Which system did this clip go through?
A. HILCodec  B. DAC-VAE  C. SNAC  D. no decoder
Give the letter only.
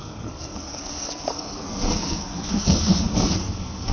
C